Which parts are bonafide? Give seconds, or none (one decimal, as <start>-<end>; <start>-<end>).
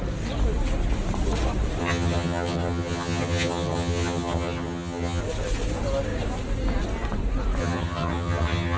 0.0-1.8; 5.2-7.6